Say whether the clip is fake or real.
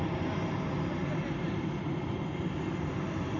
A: real